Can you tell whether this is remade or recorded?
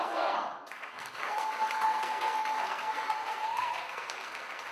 remade